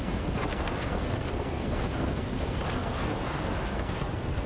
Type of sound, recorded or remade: remade